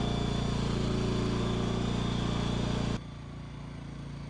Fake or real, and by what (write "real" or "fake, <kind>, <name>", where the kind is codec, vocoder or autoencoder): real